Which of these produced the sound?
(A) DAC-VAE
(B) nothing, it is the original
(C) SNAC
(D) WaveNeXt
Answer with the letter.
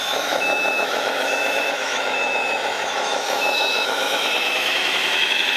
A